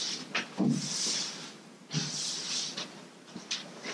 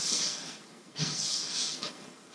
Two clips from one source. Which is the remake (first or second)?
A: second